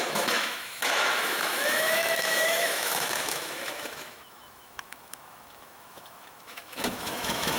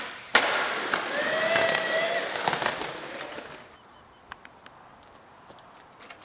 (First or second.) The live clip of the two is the second